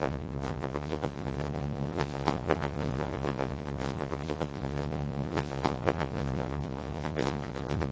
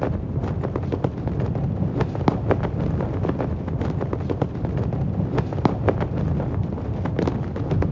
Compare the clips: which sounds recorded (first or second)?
second